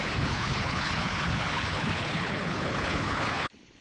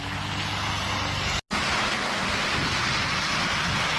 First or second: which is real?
second